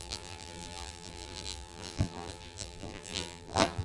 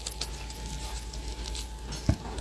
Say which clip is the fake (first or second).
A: first